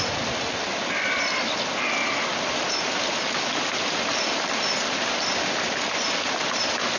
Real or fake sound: real